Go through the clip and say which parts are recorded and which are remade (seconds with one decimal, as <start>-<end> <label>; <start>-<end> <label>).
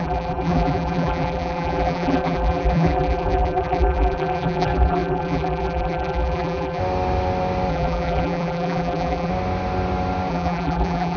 0.0-6.8 remade; 6.8-7.7 recorded; 7.7-9.3 remade; 9.3-10.3 recorded; 10.3-11.2 remade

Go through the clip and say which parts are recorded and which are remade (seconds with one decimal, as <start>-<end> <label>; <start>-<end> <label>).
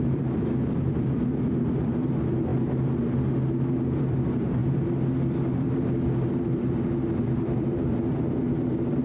0.0-2.5 remade; 2.5-3.8 recorded; 3.8-9.0 remade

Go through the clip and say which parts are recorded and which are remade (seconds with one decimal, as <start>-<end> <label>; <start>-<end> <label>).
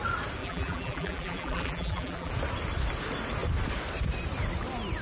0.0-0.4 recorded; 0.4-2.3 remade; 2.3-5.0 recorded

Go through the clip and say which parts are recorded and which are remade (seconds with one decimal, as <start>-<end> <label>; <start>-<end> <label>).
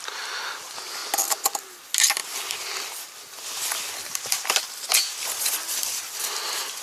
0.0-2.2 recorded; 2.2-6.3 remade; 6.3-6.8 recorded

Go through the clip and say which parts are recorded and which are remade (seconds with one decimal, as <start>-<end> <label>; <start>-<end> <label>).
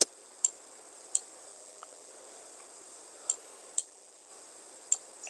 0.0-1.5 recorded; 1.5-2.1 remade; 2.1-3.8 recorded; 3.8-4.3 remade; 4.3-5.3 recorded